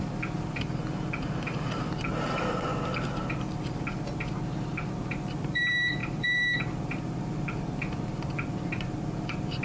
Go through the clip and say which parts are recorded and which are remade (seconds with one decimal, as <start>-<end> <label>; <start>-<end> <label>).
0.0-2.7 remade; 2.7-5.4 recorded; 5.4-9.6 remade

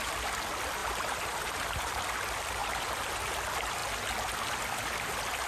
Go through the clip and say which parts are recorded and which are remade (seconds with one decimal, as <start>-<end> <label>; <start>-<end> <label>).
0.0-0.8 recorded; 0.8-2.0 remade; 2.0-2.6 recorded; 2.6-3.3 remade; 3.3-5.5 recorded

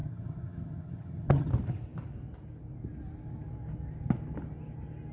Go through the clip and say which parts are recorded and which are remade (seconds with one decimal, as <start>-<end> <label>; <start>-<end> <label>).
0.0-1.5 remade; 1.5-5.1 recorded

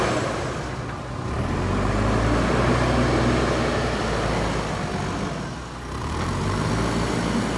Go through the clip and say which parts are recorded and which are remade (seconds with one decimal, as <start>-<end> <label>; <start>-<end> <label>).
0.0-6.0 recorded; 6.0-6.7 remade; 6.7-7.6 recorded

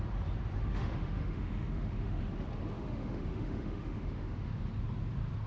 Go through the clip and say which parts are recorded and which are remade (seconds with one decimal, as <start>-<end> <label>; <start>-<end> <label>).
0.0-0.6 recorded; 0.6-2.3 remade; 2.3-2.7 recorded; 2.7-4.6 remade; 4.6-5.5 recorded

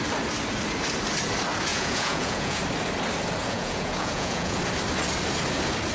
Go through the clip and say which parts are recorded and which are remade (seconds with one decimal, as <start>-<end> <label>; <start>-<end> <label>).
0.0-1.7 recorded; 1.7-2.6 remade; 2.6-3.4 recorded; 3.4-4.6 remade; 4.6-5.9 recorded